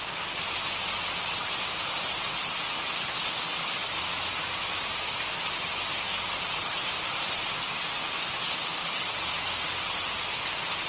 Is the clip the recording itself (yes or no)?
yes